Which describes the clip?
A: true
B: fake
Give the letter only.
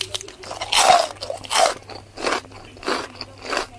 A